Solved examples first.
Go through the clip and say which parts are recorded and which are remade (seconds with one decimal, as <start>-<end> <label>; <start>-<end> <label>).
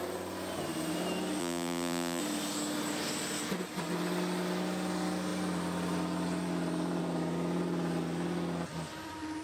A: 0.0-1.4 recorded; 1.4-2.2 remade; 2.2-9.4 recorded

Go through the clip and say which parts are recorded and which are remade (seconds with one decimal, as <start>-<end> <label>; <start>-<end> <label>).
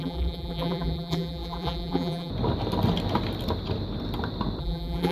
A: 0.0-2.3 remade; 2.3-4.6 recorded; 4.6-5.1 remade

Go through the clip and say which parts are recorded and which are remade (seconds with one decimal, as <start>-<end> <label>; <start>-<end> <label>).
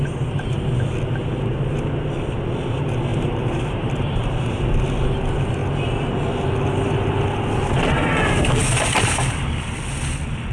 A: 0.0-3.1 recorded; 3.1-4.7 remade; 4.7-10.5 recorded